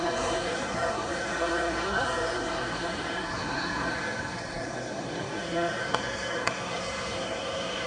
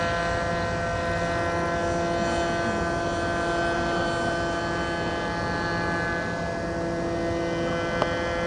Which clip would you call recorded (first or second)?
second